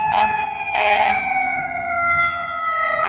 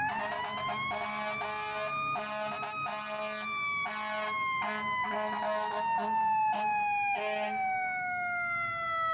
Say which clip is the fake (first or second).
first